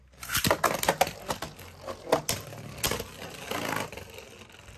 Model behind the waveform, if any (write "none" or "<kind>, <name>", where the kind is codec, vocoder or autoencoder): none